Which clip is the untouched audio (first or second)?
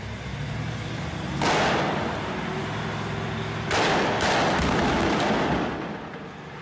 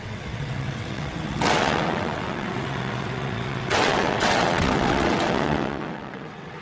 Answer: first